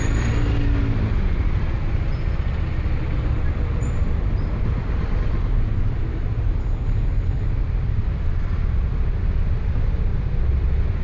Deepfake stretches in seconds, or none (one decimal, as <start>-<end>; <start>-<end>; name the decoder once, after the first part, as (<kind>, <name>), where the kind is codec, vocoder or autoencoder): 6.6-7.5 (codec, HILCodec)

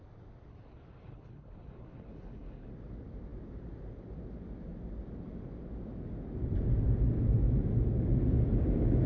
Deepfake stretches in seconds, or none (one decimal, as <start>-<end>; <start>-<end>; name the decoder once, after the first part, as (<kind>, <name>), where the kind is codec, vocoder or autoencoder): 0.5-2.7 (codec, HILCodec)

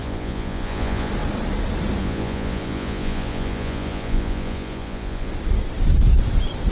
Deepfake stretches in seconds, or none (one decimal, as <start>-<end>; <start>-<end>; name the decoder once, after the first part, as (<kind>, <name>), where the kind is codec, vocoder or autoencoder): 0.0-1.1 (vocoder, Vocos); 2.0-5.3

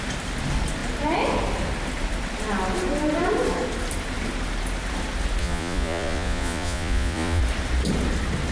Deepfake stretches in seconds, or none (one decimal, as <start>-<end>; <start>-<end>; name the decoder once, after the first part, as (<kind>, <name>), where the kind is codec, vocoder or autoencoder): 5.4-7.4 (vocoder, Vocos)

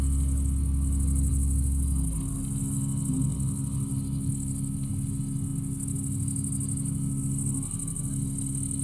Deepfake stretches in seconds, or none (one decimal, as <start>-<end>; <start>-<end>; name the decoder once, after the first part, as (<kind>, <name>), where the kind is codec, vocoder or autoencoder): none